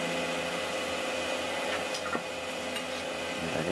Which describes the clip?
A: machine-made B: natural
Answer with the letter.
B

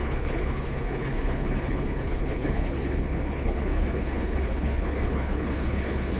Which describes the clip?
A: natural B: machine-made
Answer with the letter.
B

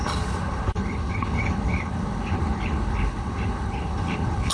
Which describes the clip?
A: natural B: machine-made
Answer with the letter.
B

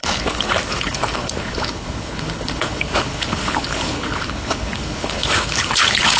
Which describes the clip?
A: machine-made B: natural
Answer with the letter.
A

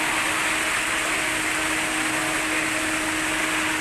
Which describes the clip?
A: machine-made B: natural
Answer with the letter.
B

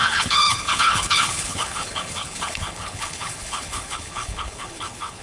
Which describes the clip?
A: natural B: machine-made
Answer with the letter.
B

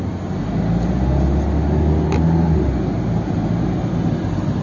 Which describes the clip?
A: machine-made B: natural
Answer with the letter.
B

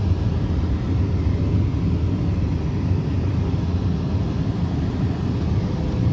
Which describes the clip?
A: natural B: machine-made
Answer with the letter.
A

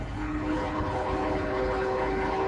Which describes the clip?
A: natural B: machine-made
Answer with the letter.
B